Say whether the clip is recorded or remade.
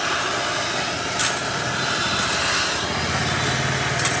recorded